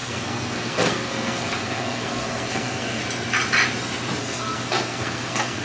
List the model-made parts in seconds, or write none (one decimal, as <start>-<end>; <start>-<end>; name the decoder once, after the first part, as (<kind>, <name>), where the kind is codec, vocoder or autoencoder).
0.0-3.0 (codec, SNAC); 4.2-5.6